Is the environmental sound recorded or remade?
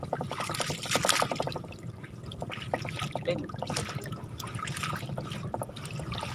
recorded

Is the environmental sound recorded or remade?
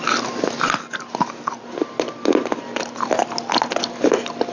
recorded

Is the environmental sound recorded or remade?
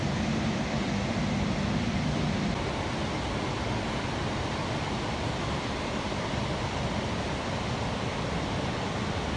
recorded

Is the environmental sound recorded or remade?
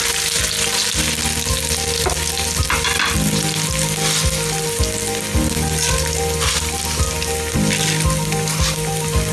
recorded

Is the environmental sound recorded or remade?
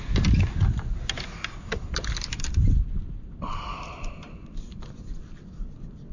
recorded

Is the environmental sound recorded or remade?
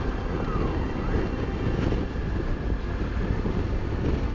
recorded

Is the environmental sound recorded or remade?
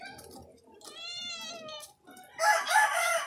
recorded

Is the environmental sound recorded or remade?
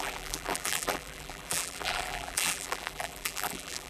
remade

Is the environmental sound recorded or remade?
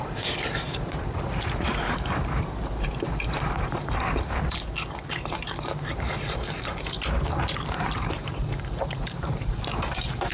remade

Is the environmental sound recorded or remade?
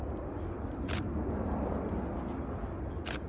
recorded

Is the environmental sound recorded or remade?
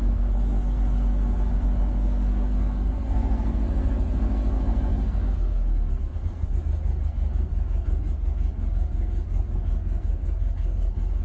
remade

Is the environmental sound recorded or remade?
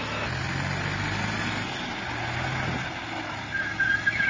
recorded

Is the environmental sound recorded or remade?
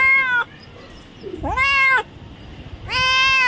recorded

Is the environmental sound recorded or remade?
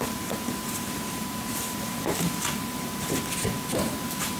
remade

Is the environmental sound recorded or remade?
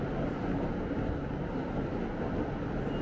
recorded